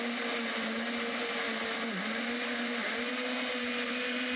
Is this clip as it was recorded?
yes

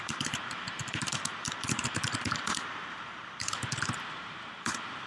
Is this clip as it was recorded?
no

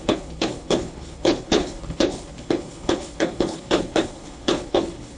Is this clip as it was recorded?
no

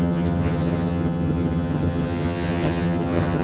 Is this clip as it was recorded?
no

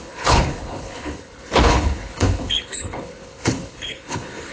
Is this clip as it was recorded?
no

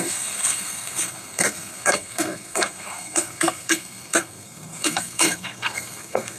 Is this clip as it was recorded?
no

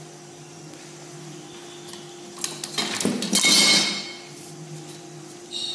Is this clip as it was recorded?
yes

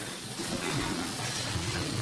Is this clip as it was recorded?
no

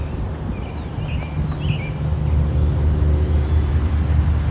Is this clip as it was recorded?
yes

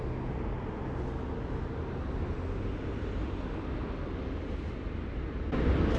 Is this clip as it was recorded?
yes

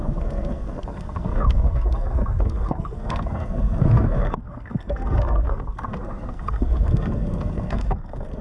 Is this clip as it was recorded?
no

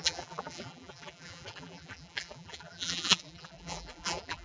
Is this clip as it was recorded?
no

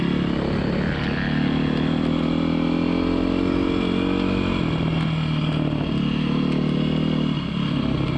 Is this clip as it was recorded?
yes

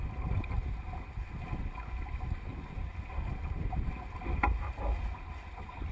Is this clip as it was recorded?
yes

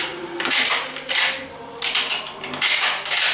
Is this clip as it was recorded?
yes